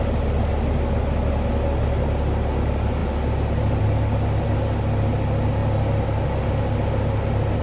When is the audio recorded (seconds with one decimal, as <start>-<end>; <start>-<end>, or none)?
0.0-7.6